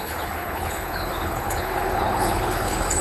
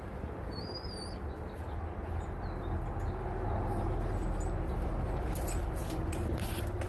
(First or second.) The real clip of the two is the second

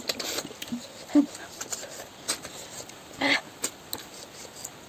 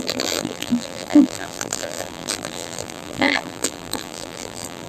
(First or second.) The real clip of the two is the first